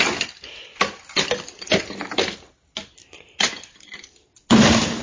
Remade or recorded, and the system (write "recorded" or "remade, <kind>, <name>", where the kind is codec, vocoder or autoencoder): recorded